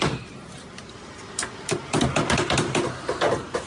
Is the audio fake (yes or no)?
no